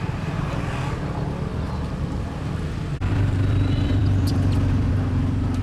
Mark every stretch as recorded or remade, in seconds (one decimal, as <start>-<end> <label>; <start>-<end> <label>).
0.0-1.5 recorded; 1.5-4.9 remade; 4.9-5.6 recorded